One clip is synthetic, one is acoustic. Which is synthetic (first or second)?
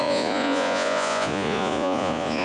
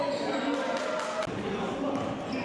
first